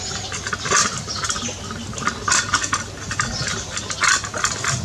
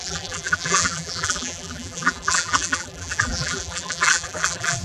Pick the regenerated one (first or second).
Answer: second